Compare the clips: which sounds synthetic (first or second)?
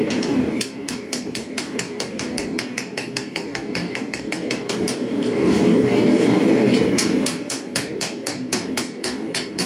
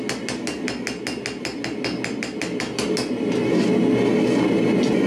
first